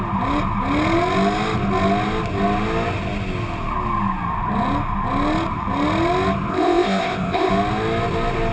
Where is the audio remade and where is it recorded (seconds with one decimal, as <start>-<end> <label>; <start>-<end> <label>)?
0.0-6.5 recorded; 6.5-7.5 remade; 7.5-8.5 recorded